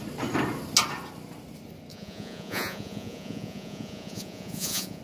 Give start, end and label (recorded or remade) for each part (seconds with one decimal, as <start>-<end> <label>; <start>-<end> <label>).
0.0-1.9 recorded; 1.9-5.0 remade